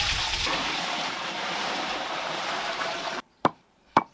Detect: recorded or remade remade